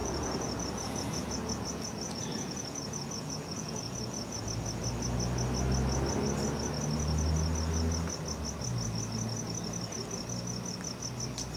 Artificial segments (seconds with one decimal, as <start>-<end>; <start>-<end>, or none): 0.0-4.4